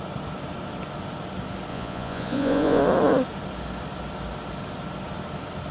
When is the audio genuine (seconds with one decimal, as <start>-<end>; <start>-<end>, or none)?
0.0-1.7; 2.8-5.7